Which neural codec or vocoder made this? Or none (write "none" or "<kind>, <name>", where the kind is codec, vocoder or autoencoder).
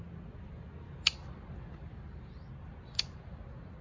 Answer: none